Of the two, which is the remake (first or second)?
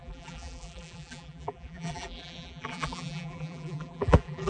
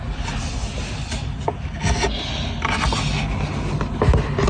first